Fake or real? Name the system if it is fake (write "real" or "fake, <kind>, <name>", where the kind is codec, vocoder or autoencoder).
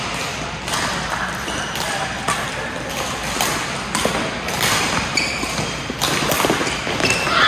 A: real